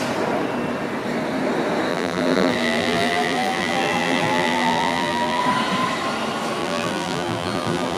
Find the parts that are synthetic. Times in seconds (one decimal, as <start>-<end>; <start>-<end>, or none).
1.9-5.4; 6.6-8.0